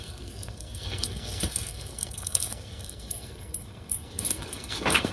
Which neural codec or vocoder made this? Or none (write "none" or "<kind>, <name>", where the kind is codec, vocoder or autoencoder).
codec, SNAC